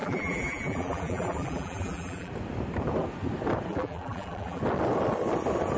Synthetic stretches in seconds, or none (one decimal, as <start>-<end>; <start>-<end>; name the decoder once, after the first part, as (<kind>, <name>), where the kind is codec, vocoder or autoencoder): 0.0-2.3 (vocoder, BigVGAN v2); 3.7-4.6